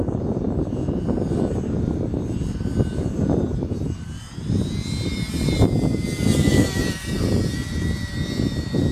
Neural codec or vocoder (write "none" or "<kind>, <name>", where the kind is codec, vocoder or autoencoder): vocoder, BigVGAN v2